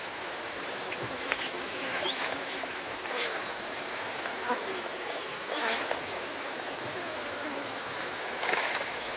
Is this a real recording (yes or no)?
no